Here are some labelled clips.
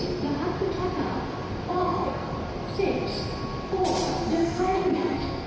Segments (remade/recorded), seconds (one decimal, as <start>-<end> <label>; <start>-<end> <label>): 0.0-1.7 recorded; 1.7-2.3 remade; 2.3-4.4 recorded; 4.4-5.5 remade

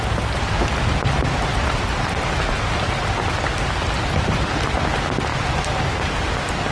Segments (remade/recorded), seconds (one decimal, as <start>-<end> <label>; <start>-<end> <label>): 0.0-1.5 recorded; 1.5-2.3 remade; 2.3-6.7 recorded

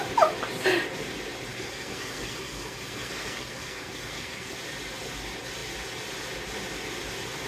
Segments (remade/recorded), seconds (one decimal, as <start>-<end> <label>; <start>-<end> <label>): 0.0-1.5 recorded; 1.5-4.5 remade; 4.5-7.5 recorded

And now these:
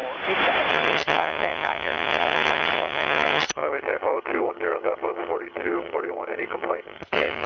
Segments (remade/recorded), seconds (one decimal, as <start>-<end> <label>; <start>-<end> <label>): 0.0-0.7 recorded; 0.7-7.5 remade

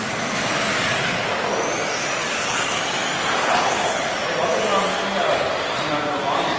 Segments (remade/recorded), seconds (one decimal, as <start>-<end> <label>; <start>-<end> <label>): 0.0-2.2 recorded; 2.2-2.8 remade; 2.8-3.4 recorded; 3.4-4.1 remade; 4.1-6.6 recorded